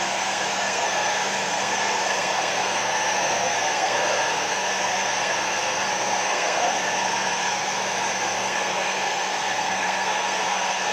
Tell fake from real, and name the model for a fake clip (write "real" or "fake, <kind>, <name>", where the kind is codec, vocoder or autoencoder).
fake, codec, SNAC